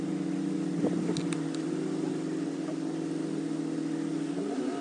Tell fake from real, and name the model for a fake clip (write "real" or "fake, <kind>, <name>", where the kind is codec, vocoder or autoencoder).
real